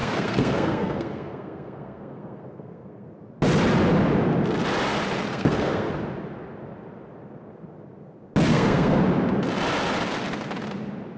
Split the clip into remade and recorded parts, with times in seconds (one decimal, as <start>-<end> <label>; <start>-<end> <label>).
0.0-3.1 remade; 3.1-5.3 recorded; 5.3-5.9 remade; 5.9-8.5 recorded; 8.5-9.0 remade; 9.0-11.2 recorded